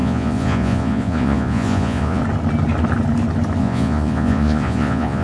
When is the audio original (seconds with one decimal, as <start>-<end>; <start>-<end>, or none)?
2.2-3.6